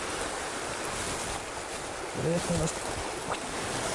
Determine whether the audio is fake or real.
real